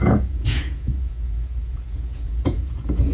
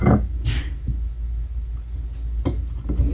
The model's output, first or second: first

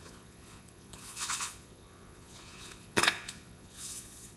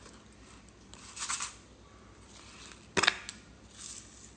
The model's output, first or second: first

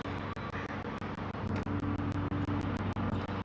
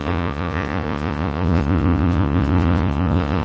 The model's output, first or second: second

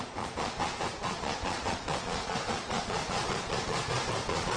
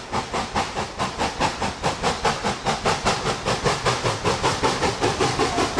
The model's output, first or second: first